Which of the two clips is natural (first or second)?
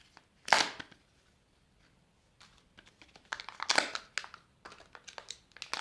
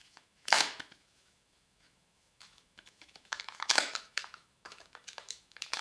first